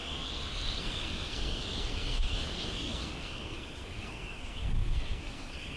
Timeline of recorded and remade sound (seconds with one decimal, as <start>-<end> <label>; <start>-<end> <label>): 0.0-5.8 remade